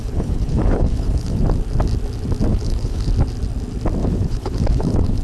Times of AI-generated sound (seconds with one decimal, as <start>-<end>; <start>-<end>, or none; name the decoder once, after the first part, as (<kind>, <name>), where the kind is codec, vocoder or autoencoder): 0.0-1.4 (codec, HILCodec); 2.5-3.1; 4.0-5.2